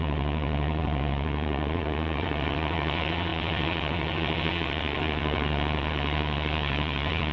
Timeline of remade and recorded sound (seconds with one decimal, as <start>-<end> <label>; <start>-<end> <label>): 0.0-7.3 remade